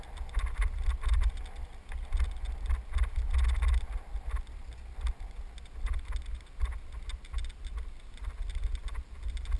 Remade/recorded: recorded